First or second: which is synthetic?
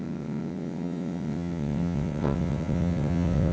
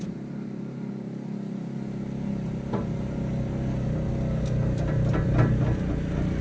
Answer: first